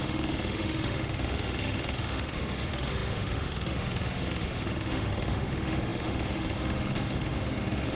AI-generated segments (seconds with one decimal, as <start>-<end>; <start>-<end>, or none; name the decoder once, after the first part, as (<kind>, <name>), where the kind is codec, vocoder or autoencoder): 0.0-8.0 (autoencoder, DAC-VAE)